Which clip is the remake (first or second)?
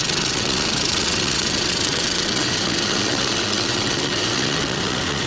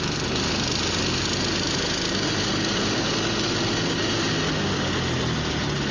first